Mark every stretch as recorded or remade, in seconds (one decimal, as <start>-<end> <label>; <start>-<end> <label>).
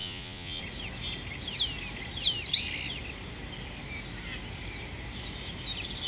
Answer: 0.0-0.6 remade; 0.6-6.1 recorded